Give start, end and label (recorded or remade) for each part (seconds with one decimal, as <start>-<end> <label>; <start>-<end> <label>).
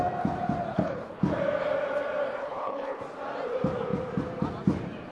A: 0.0-0.7 recorded; 0.7-1.2 remade; 1.2-2.4 recorded; 2.4-3.0 remade; 3.0-5.1 recorded